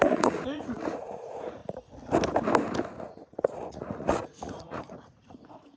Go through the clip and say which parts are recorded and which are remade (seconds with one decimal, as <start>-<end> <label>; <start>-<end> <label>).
0.0-1.6 remade; 1.6-3.0 recorded; 3.0-5.8 remade